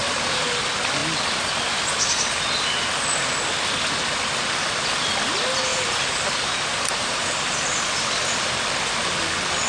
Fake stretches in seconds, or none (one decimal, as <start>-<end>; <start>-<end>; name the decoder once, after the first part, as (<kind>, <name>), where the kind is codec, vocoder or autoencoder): 0.0-0.6 (vocoder, BigVGAN v2); 5.7-7.5